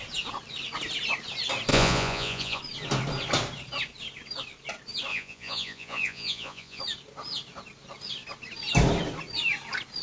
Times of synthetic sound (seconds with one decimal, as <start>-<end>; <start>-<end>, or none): 1.7-2.6; 5.1-6.8